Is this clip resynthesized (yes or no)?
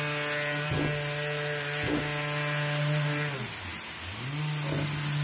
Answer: no